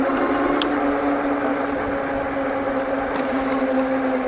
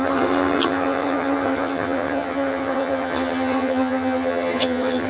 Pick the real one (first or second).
first